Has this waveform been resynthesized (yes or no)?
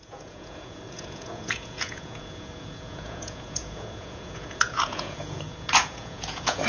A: yes